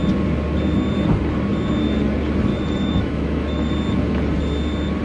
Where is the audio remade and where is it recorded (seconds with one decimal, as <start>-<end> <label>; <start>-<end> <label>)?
0.0-2.5 recorded; 2.5-3.7 remade; 3.7-5.0 recorded